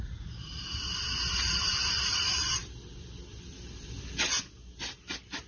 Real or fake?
real